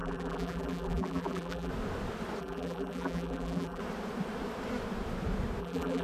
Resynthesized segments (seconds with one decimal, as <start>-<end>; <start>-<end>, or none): 0.0-1.7; 2.4-3.8; 5.6-6.0

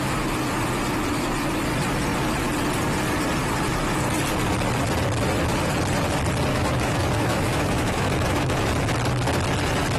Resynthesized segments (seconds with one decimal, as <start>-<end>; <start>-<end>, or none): 6.5-8.7